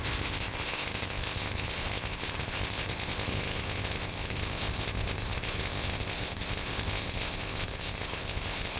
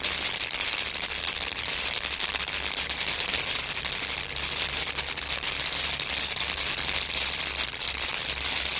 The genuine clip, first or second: second